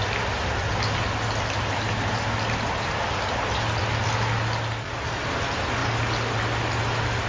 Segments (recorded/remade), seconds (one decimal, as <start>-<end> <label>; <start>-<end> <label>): 0.0-7.3 recorded